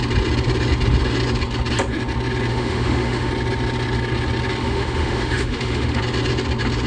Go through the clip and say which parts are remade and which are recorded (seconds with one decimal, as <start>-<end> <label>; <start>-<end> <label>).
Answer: 0.0-2.5 recorded; 2.5-3.3 remade; 3.3-4.6 recorded; 4.6-6.0 remade; 6.0-6.9 recorded